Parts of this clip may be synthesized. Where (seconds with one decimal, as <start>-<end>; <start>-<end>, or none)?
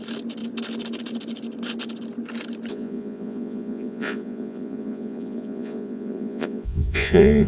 2.7-7.5